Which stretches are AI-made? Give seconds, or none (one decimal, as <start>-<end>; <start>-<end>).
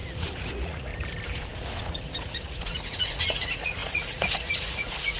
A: 0.0-0.9; 1.8-5.2